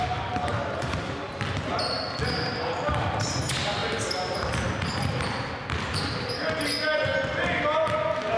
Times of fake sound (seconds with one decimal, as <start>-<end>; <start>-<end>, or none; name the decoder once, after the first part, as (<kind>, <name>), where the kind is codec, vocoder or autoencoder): 0.5-1.3 (vocoder, BigVGAN v2)